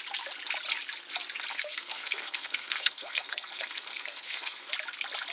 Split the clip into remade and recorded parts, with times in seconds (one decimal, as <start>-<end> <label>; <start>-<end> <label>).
0.0-1.5 recorded; 1.5-4.7 remade; 4.7-5.3 recorded